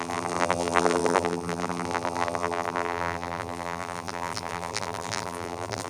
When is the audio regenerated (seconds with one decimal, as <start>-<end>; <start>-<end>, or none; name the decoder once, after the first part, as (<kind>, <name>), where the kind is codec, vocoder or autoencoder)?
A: 0.0-5.9 (vocoder, BigVGAN v2)